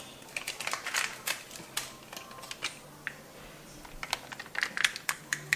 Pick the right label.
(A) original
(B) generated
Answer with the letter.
A